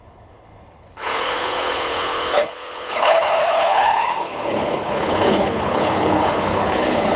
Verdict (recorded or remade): remade